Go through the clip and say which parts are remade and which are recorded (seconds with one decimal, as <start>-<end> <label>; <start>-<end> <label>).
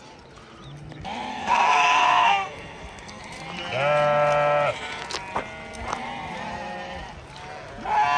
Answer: 0.0-1.3 recorded; 1.3-3.2 remade; 3.2-8.2 recorded